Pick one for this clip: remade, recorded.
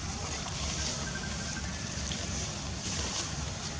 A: recorded